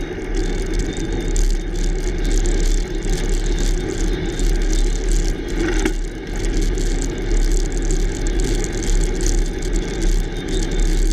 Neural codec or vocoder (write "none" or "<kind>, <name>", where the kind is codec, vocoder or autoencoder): none